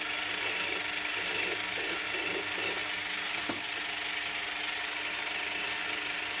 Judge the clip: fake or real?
real